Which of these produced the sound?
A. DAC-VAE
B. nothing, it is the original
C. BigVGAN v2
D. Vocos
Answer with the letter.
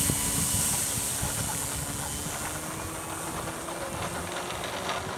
B